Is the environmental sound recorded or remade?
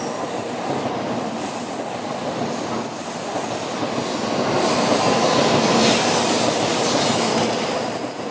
recorded